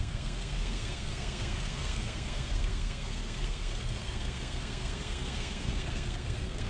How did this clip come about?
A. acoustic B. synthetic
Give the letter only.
B